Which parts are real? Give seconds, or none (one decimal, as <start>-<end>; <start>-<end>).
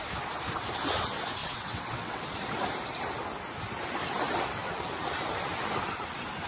0.0-1.4; 2.2-6.5